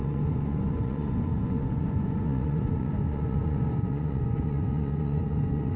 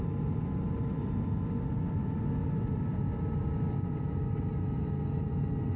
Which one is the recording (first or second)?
second